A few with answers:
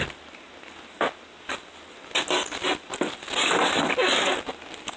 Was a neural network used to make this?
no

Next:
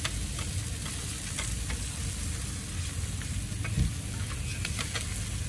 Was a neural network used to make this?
no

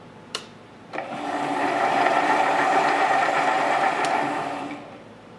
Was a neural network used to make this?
yes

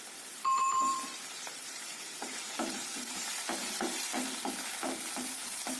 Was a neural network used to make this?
yes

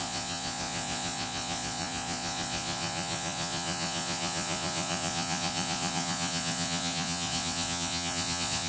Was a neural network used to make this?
yes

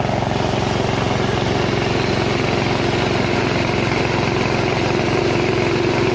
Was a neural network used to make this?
no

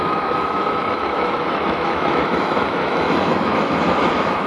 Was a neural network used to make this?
yes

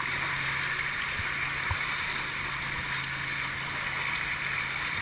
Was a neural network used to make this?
no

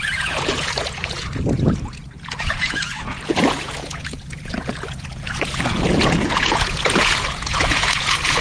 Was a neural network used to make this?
yes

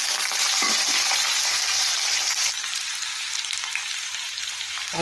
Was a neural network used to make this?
yes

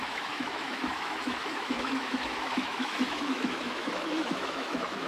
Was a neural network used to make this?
yes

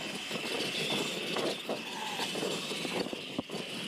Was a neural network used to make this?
no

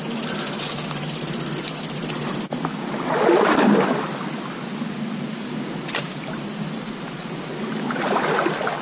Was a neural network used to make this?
no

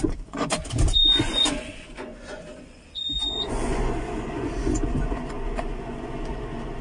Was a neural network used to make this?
yes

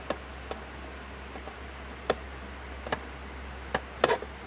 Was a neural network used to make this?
yes